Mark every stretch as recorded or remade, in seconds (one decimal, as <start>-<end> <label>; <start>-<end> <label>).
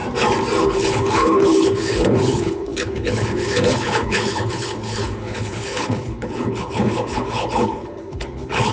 0.0-0.6 recorded; 0.6-8.7 remade